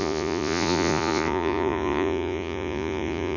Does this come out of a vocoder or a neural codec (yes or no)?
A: yes